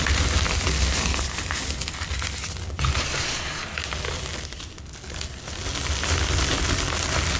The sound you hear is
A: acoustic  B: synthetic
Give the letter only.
A